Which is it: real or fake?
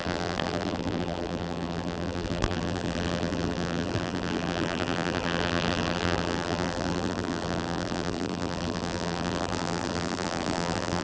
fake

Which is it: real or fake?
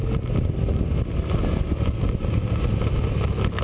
real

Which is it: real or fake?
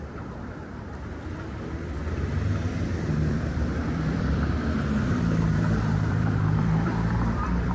fake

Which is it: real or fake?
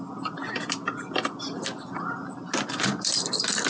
real